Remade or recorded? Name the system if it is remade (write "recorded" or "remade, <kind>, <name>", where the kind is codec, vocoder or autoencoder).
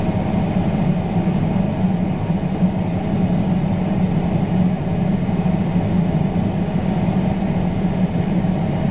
recorded